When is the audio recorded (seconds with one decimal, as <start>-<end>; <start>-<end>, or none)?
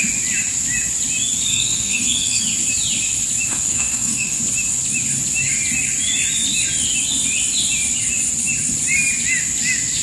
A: 0.0-1.5; 2.4-3.5; 4.4-10.0